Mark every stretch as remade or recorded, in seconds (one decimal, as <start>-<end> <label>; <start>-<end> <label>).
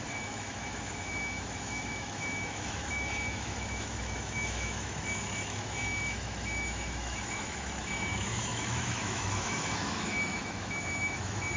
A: 0.0-11.6 remade